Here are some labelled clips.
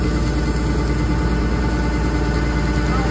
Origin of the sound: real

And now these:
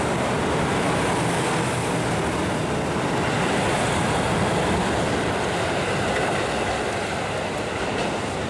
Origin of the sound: real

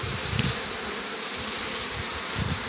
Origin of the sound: fake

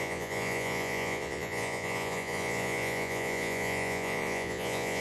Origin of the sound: fake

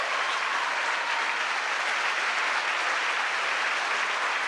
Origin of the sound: real